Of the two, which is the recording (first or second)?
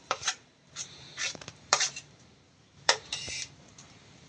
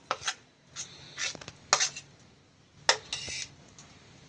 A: second